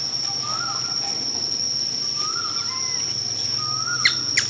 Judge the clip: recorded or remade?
recorded